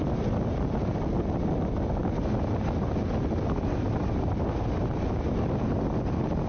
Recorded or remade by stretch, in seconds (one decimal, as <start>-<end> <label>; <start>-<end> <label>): 0.0-6.5 recorded